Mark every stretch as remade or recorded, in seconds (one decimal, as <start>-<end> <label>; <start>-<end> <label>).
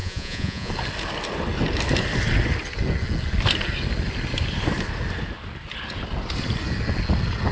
0.0-0.7 remade; 0.7-7.5 recorded